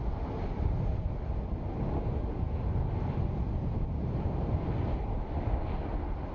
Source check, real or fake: real